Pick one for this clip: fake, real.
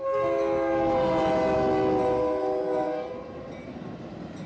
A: real